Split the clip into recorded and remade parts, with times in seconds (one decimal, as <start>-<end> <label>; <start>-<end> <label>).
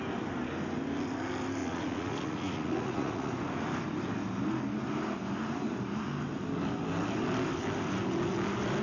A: 0.0-1.6 recorded; 1.6-3.3 remade; 3.3-8.8 recorded